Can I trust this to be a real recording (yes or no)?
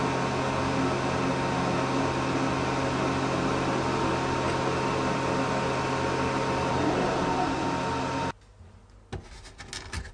yes